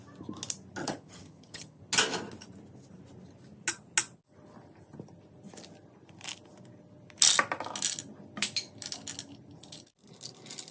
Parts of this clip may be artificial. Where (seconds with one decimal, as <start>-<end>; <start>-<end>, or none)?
0.8-1.8